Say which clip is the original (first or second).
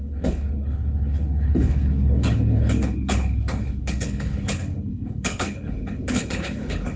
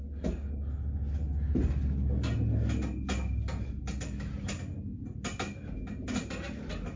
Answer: second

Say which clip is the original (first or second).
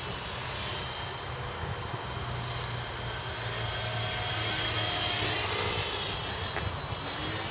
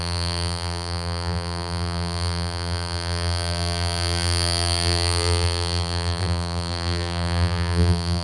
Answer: first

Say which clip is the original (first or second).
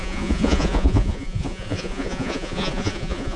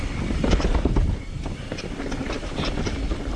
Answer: second